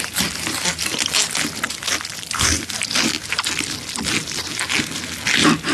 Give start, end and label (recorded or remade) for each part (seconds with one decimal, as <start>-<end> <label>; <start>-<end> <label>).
0.0-5.7 recorded